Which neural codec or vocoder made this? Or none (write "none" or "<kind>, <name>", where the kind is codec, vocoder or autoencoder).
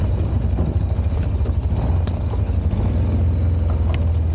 none